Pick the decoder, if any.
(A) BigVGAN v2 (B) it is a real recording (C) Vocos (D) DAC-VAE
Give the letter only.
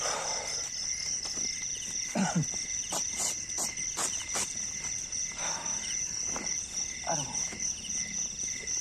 B